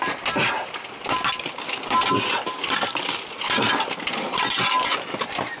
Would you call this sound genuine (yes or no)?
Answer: yes